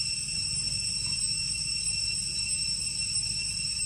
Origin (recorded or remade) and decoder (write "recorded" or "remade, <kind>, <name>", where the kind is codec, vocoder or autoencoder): recorded